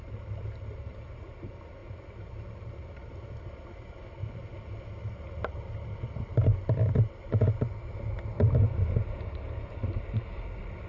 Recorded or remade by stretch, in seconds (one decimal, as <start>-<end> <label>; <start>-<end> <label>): 0.0-10.9 recorded